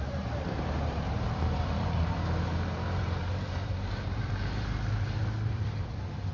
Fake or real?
fake